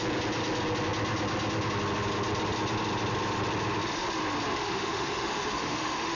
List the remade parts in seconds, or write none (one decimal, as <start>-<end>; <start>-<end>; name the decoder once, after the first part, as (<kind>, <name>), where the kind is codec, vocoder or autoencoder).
4.5-6.1 (autoencoder, DAC-VAE)